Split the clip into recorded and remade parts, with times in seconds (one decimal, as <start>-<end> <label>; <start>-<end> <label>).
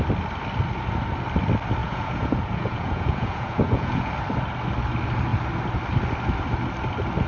0.0-1.8 recorded; 1.8-4.1 remade; 4.1-7.3 recorded